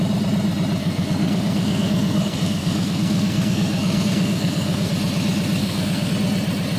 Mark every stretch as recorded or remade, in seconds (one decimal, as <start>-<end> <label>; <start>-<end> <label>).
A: 0.0-0.8 recorded; 0.8-4.9 remade; 4.9-5.6 recorded; 5.6-6.1 remade; 6.1-6.8 recorded

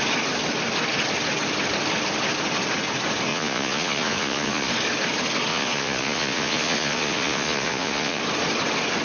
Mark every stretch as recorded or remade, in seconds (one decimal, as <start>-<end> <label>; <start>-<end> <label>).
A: 0.0-3.3 recorded; 3.3-4.7 remade; 4.7-5.5 recorded; 5.5-8.2 remade; 8.2-9.0 recorded

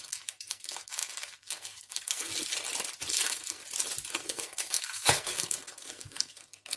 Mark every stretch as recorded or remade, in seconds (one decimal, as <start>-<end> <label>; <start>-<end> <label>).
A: 0.0-2.3 remade; 2.3-3.1 recorded; 3.1-3.6 remade; 3.6-4.1 recorded; 4.1-6.8 remade

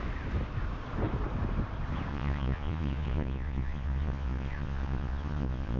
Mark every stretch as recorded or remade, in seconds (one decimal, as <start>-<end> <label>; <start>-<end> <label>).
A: 0.0-2.1 recorded; 2.1-5.8 remade

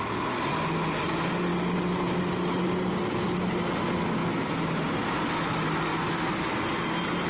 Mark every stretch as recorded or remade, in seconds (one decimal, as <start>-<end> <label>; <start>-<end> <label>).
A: 0.0-7.3 recorded